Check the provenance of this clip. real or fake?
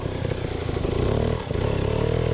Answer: real